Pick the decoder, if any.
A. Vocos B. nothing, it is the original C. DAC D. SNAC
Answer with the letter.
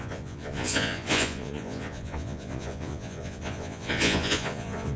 A